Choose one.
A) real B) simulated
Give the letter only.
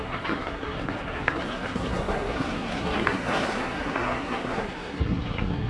B